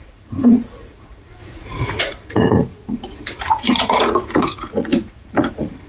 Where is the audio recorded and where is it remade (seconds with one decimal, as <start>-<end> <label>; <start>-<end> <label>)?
0.0-5.9 remade